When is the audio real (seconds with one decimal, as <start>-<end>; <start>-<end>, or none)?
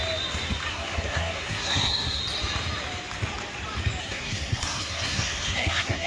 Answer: 0.0-0.7; 2.2-4.0